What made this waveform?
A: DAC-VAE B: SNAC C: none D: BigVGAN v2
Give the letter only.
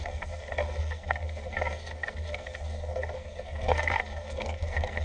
B